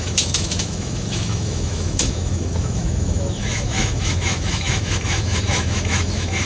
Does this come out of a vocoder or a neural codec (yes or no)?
yes